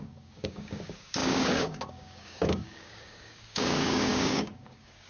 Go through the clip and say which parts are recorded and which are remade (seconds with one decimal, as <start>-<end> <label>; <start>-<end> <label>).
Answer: 0.0-5.1 remade